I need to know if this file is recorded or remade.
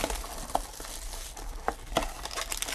recorded